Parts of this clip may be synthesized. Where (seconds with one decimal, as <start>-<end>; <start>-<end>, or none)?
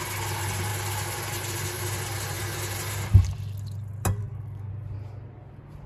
4.2-4.7